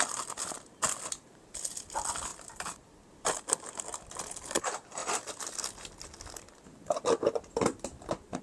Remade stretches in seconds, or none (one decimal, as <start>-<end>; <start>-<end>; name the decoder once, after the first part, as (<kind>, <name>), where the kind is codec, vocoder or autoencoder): none